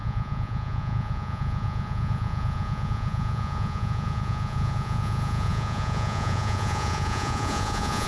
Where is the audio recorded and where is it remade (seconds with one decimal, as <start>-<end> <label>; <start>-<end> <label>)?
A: 0.0-8.1 remade